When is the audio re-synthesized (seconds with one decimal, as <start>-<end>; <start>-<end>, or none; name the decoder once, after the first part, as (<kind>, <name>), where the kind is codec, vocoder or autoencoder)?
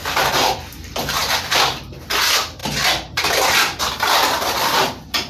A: 0.0-0.7 (vocoder, BigVGAN v2); 1.2-2.1